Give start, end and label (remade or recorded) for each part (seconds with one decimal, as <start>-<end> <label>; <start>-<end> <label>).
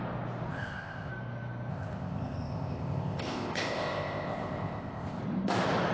0.0-0.5 recorded; 0.5-1.1 remade; 1.1-1.7 recorded; 1.7-5.2 remade; 5.2-5.9 recorded